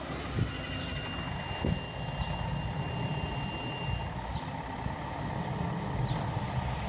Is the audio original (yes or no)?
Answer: yes